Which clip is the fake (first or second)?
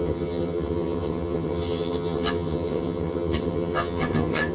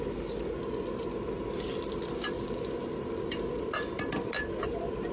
first